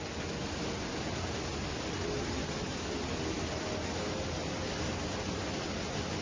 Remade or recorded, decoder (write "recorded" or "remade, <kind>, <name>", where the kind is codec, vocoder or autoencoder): recorded